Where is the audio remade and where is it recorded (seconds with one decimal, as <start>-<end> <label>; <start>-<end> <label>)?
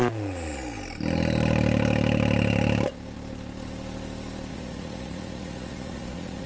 0.0-4.5 recorded; 4.5-6.5 remade